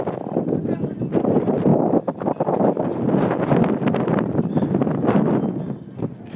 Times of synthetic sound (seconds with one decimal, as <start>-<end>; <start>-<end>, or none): none